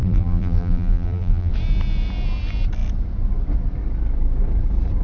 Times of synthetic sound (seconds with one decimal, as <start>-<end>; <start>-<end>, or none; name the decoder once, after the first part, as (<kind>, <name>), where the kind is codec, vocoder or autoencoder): 0.0-1.5 (vocoder, BigVGAN v2)